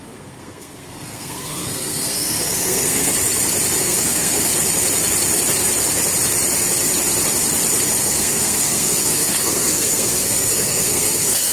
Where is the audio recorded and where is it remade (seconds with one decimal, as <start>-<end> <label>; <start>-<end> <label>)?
0.0-3.1 remade; 3.1-3.8 recorded; 3.8-4.5 remade; 4.5-8.0 recorded; 8.0-11.5 remade

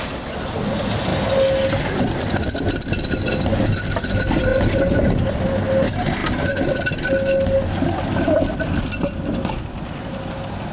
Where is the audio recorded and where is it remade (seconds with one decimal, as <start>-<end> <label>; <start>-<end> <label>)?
0.0-4.5 recorded; 4.5-5.1 remade; 5.1-10.7 recorded

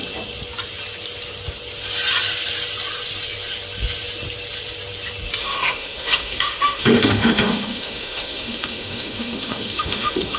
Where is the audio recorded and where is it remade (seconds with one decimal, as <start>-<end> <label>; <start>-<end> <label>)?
0.0-5.4 recorded; 5.4-10.4 remade